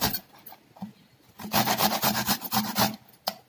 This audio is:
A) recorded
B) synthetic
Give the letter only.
A